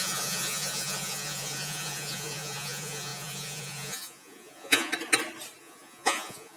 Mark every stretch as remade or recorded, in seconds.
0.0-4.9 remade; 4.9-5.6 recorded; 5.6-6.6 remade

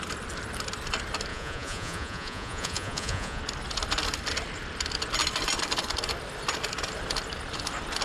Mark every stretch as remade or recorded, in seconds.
0.0-1.3 recorded; 1.3-3.4 remade; 3.4-8.0 recorded

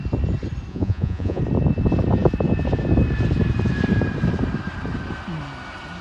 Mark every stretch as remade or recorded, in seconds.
0.0-0.7 recorded; 0.7-1.4 remade; 1.4-6.0 recorded

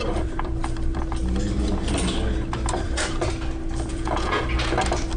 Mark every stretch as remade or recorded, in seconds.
0.0-3.9 recorded; 3.9-4.4 remade; 4.4-5.2 recorded

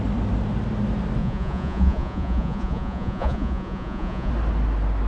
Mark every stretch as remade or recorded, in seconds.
0.0-1.2 recorded; 1.2-4.3 remade; 4.3-5.1 recorded

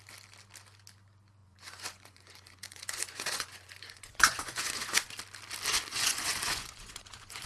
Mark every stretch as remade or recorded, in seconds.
0.0-1.4 recorded; 1.4-5.1 remade; 5.1-5.9 recorded; 5.9-7.5 remade

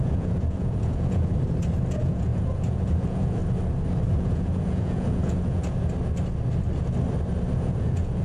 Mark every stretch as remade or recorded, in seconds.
0.0-1.3 remade; 1.3-1.9 recorded; 1.9-3.4 remade; 3.4-4.1 recorded; 4.1-5.6 remade; 5.6-7.6 recorded; 7.6-8.2 remade